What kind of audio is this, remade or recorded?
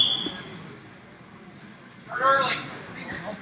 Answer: recorded